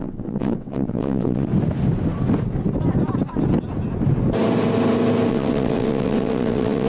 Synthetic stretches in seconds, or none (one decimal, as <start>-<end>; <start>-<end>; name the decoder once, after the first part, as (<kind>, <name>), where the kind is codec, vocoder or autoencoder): 0.0-1.5 (vocoder, WaveNeXt); 5.3-6.9